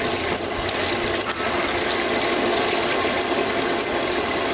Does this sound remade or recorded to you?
recorded